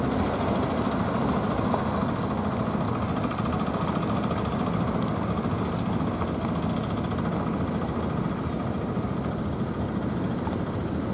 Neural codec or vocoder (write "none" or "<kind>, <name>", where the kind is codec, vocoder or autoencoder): none